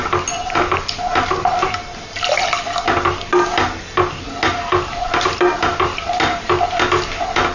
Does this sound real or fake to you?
real